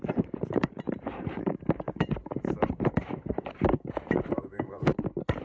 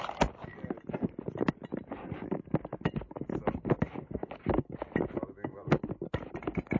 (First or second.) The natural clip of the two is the second